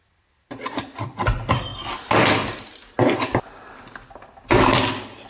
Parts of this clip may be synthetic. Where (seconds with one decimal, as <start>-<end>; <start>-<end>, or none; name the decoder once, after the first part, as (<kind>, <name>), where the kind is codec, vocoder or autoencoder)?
none